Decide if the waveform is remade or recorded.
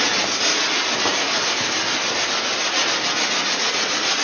recorded